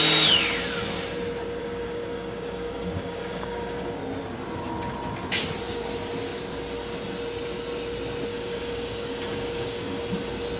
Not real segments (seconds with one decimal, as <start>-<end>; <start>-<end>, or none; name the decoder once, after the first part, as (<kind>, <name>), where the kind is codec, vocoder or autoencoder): 1.6-4.0 (codec, DAC); 8.3-10.0